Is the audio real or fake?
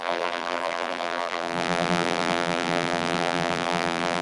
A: fake